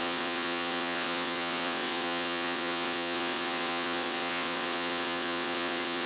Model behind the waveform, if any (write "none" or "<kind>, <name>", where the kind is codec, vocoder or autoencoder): vocoder, WaveNeXt